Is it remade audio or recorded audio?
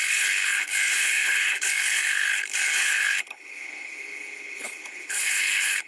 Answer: remade